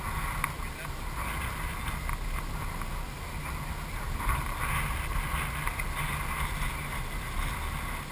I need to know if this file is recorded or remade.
recorded